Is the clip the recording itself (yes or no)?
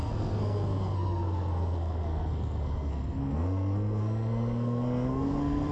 no